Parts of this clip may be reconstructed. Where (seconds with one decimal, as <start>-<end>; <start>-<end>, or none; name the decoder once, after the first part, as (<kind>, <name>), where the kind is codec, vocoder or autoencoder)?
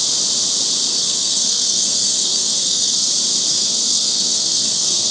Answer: 0.9-3.1 (codec, SNAC); 3.5-5.1